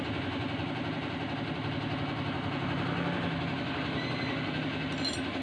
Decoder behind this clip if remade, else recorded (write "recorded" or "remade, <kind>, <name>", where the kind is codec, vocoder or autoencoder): recorded